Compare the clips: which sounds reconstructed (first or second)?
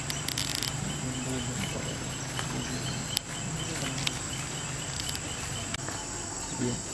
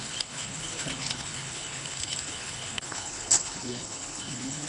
second